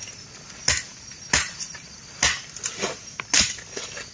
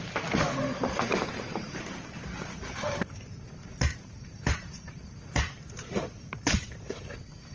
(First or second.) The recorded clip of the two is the first